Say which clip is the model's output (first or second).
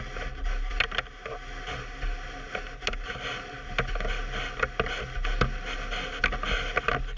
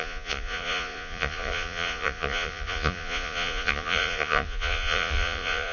second